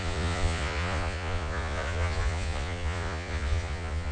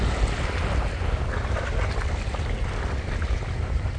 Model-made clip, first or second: first